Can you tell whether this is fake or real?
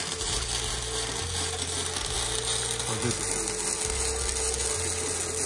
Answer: real